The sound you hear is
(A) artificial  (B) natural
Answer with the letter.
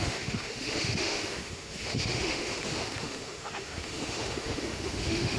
A